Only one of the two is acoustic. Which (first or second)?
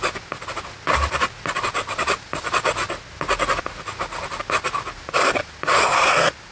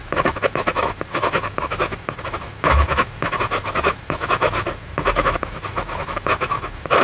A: first